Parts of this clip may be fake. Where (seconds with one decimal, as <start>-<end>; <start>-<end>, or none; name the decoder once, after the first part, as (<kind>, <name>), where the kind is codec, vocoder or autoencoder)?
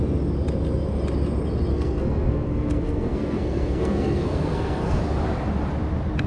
1.7-5.0 (codec, SNAC)